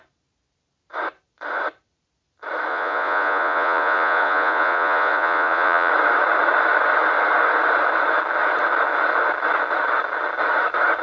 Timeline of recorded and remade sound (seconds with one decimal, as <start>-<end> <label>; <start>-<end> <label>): 0.0-2.7 recorded; 2.7-5.9 remade; 5.9-11.0 recorded